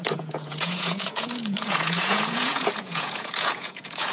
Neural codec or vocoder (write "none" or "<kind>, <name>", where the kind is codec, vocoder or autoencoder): vocoder, Vocos